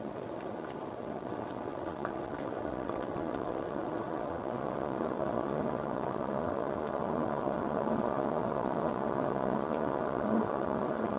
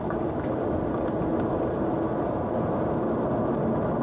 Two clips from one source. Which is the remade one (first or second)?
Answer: first